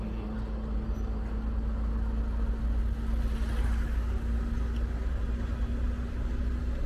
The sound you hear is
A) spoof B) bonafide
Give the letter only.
B